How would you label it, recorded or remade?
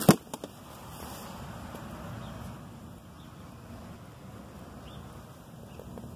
recorded